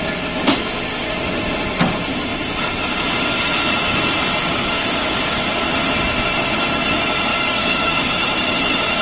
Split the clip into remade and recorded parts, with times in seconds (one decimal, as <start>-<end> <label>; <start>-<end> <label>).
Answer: 0.0-4.4 recorded; 4.4-5.5 remade; 5.5-7.3 recorded; 7.3-8.1 remade; 8.1-9.0 recorded